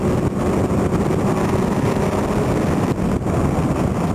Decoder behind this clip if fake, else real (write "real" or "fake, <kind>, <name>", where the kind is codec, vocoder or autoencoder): real